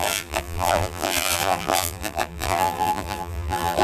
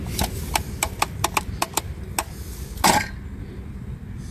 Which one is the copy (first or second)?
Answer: first